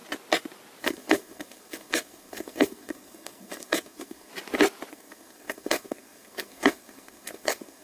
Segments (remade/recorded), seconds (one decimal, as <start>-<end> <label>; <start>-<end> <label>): 0.0-0.8 recorded; 0.8-4.3 remade; 4.3-4.9 recorded; 4.9-7.8 remade